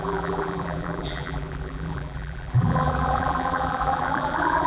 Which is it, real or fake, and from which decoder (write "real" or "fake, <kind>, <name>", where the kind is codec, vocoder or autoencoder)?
fake, vocoder, BigVGAN v2